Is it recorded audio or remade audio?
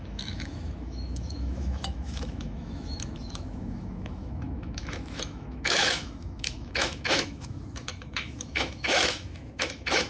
remade